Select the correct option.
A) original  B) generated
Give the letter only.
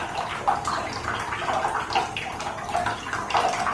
A